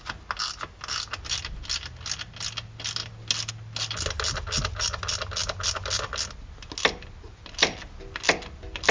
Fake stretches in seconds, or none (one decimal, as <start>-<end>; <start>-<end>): none